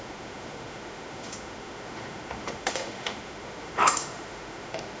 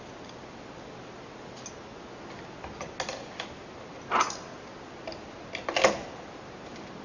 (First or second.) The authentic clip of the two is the second